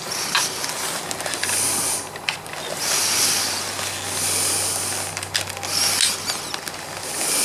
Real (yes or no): yes